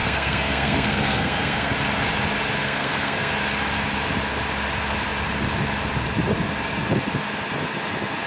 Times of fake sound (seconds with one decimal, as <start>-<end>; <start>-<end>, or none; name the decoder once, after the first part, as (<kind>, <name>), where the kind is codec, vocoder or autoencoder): 0.0-1.7 (codec, SNAC); 2.6-3.3